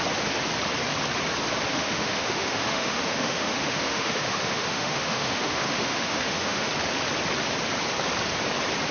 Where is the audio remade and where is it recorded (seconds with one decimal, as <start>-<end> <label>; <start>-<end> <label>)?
0.0-1.7 recorded; 1.7-6.7 remade; 6.7-8.9 recorded